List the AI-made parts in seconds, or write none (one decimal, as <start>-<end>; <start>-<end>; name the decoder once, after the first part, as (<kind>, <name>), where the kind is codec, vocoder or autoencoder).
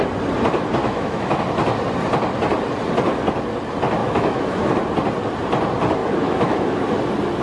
0.8-1.4 (autoencoder, DAC-VAE); 4.0-4.7; 6.0-7.0